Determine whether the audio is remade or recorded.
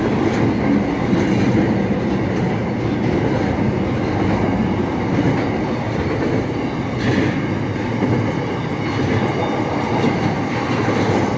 recorded